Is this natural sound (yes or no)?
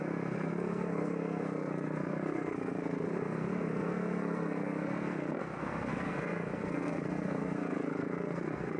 no